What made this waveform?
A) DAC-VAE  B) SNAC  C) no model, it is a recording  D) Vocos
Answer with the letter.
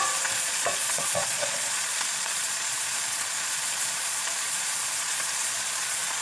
D